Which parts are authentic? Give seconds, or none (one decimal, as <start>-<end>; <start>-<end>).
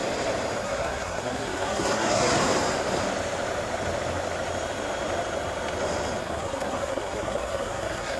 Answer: 0.0-0.6; 2.4-6.2